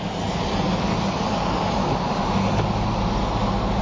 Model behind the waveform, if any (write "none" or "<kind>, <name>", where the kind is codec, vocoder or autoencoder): none